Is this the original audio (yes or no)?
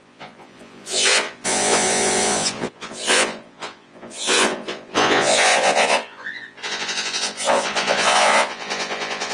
no